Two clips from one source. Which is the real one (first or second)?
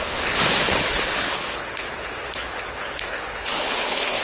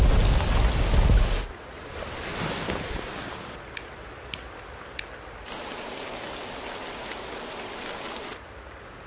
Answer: second